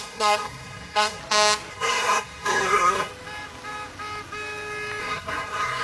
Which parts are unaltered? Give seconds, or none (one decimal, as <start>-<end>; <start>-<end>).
1.2-1.7; 3.1-5.0